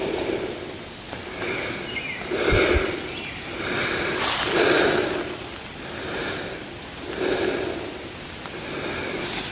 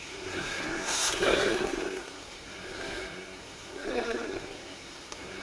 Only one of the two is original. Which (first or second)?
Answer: first